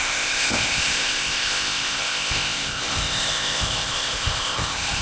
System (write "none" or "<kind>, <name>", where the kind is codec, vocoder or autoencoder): codec, ZipCodec